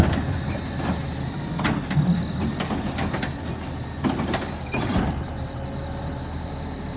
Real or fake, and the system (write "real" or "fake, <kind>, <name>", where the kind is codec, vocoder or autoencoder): real